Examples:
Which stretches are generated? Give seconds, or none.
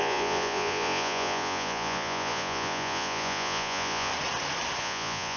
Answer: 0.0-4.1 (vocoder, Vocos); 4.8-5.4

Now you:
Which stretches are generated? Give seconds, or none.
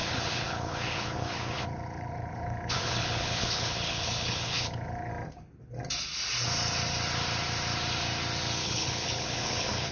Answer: 0.0-5.1 (codec, HILCodec); 8.6-9.9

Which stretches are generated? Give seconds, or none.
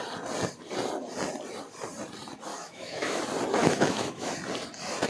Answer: 2.5-3.2 (autoencoder, DAC-VAE); 3.6-4.3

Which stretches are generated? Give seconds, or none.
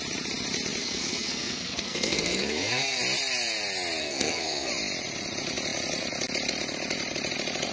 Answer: 0.8-3.0 (codec, SNAC); 4.0-4.7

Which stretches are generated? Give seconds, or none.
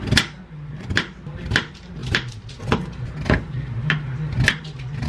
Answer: none